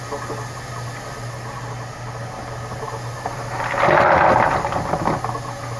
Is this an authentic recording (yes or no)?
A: yes